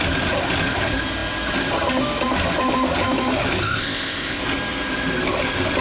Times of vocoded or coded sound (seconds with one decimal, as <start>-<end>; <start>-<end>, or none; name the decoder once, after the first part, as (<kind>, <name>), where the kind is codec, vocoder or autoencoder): 3.6-4.4 (codec, ZipCodec)

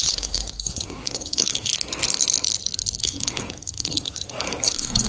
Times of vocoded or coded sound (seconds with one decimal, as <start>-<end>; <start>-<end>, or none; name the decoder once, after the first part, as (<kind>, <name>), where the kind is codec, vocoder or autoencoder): 0.0-1.7 (codec, SNAC); 3.0-5.1